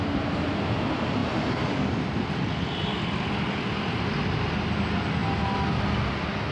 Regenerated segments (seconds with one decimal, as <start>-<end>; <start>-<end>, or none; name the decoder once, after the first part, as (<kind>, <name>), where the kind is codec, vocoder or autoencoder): none

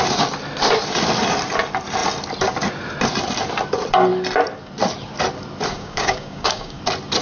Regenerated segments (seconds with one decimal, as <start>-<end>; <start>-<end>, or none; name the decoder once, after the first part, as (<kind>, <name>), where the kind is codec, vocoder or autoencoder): 5.7-6.8 (codec, DAC)

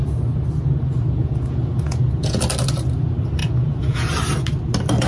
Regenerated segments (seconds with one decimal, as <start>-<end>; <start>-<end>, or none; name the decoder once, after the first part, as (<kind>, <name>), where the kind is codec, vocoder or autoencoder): 1.2-2.4 (vocoder, Vocos); 3.4-4.1